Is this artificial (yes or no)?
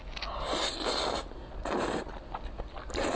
no